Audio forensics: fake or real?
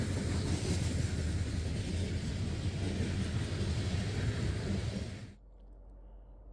real